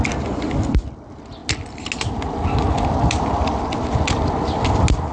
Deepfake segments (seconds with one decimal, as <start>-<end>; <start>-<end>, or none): none